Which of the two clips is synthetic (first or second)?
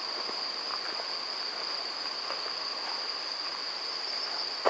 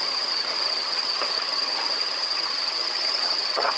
second